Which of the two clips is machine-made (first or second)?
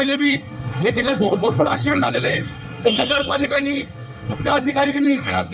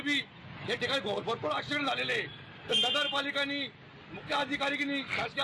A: first